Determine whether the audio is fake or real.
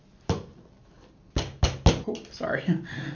real